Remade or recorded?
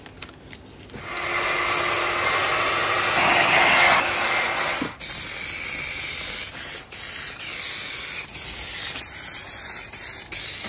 recorded